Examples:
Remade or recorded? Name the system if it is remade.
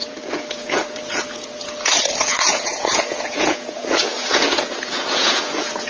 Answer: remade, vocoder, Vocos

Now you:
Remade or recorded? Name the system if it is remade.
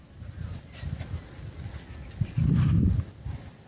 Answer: recorded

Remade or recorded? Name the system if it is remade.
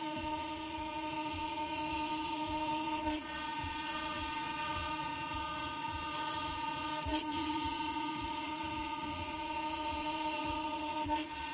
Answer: remade, vocoder, Vocos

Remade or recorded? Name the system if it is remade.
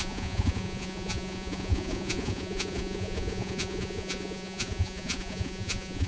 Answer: remade, vocoder, Vocos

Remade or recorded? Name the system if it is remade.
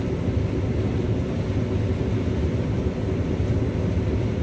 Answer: recorded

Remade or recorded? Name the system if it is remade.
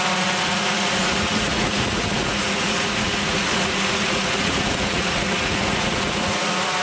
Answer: remade, vocoder, Vocos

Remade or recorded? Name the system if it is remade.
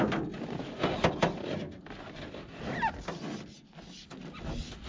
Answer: recorded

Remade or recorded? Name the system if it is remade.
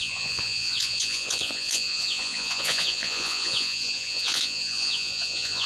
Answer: remade, vocoder, Vocos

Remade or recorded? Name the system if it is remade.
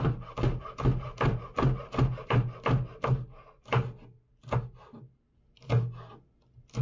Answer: recorded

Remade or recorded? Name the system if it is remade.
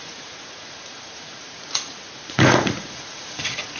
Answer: remade, vocoder, Vocos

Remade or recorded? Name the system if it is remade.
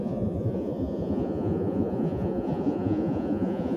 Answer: remade, vocoder, Vocos